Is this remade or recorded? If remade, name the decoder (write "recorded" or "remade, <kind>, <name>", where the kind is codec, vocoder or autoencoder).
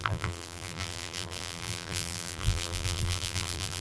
remade, vocoder, BigVGAN v2